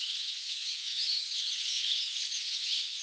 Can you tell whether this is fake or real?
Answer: fake